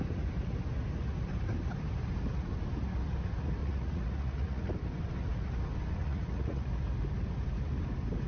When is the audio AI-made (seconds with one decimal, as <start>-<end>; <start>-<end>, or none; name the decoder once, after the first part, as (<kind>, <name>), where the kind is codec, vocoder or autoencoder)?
3.6-4.7 (vocoder, Vocos); 6.0-6.7